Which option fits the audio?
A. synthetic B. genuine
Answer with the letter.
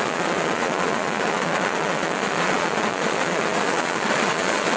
A